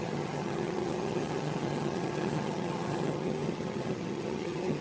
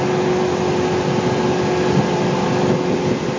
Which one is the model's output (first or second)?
first